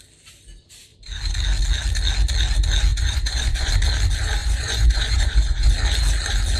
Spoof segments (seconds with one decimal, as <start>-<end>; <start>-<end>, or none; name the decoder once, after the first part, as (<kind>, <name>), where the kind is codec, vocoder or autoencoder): 2.9-3.7 (vocoder, Vocos); 4.4-5.7